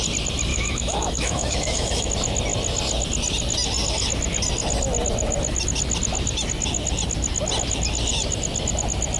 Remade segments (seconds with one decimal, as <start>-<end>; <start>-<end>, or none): 0.5-2.1